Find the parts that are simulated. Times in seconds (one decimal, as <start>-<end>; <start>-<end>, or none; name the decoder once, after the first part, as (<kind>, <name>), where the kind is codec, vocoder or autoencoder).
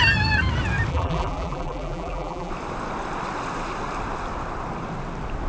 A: 0.9-2.5 (vocoder, BigVGAN v2)